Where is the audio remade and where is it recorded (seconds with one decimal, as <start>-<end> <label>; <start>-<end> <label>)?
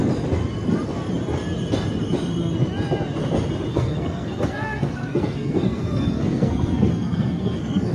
0.0-3.7 recorded; 3.7-7.9 remade